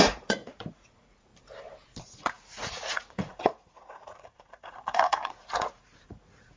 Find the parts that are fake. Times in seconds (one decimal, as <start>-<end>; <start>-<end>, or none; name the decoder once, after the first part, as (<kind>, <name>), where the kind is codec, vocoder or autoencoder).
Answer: 0.0-1.3 (vocoder, Vocos); 2.0-6.6